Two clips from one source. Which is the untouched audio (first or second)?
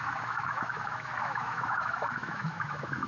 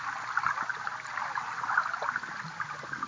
second